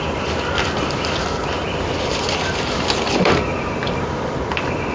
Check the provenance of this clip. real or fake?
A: fake